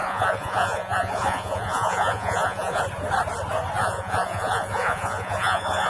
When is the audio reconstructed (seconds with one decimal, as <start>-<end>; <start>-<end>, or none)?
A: 0.0-2.8; 3.8-5.9